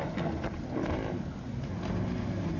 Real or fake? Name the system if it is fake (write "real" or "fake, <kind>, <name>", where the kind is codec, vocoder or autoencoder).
real